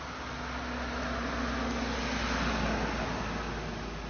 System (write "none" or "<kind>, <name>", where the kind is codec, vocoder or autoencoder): none